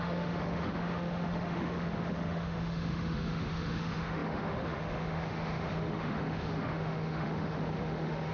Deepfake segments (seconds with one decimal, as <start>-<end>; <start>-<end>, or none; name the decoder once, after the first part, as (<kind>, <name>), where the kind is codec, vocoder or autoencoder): 0.0-8.3 (autoencoder, DAC-VAE)